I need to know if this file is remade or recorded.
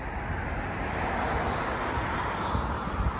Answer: recorded